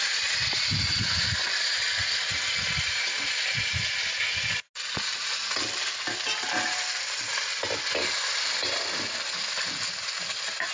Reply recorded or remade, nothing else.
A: recorded